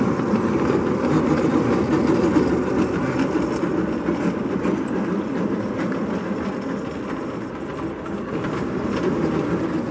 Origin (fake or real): real